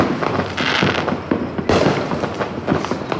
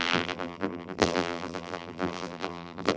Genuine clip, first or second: first